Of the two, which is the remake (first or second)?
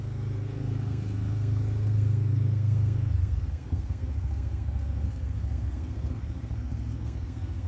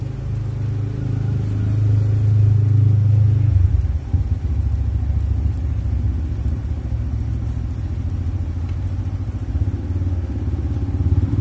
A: first